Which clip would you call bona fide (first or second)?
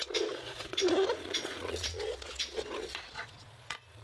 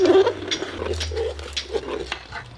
second